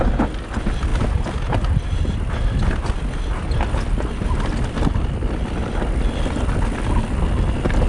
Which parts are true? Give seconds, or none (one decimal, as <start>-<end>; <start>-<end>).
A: 0.0-7.9